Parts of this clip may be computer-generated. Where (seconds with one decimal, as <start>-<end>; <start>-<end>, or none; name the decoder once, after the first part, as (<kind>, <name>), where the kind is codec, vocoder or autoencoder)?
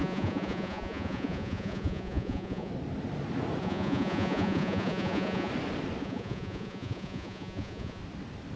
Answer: 0.0-2.7 (vocoder, Vocos); 3.6-5.5; 6.0-8.0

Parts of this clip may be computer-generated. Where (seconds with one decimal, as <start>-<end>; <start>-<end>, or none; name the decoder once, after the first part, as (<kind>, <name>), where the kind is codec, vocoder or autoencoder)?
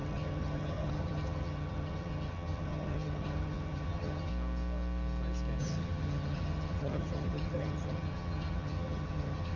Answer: 0.0-4.3 (vocoder, HiFi-GAN); 5.6-9.6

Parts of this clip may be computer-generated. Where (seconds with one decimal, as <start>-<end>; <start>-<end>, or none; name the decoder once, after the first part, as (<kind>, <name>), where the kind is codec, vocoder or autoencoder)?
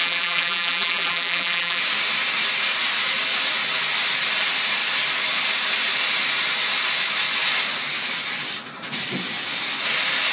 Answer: 0.0-1.8 (vocoder, BigVGAN v2)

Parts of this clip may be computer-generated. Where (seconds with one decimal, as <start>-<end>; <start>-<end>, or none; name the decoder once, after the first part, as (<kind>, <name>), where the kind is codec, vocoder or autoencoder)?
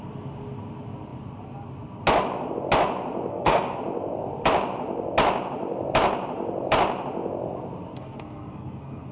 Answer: 3.3-3.8 (codec, SNAC); 7.9-9.1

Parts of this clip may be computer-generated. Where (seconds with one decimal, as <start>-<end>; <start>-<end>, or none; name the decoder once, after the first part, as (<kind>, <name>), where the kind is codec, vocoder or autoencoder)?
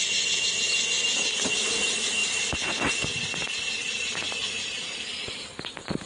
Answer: none